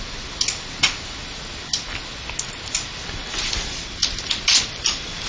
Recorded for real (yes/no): yes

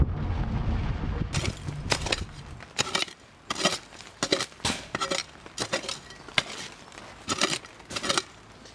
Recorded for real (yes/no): yes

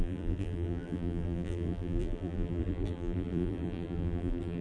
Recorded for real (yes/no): no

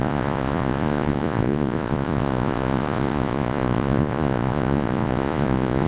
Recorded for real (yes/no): no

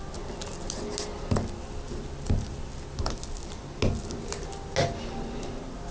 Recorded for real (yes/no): yes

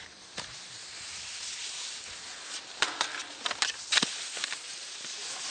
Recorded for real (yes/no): yes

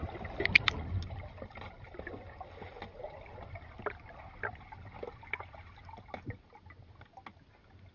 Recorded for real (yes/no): yes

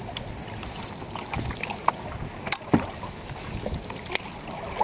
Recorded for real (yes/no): yes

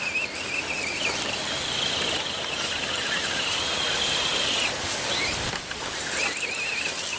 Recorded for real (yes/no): yes